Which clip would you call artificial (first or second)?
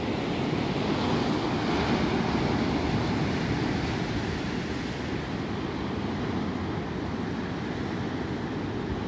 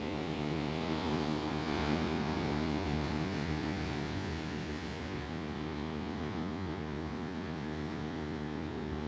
second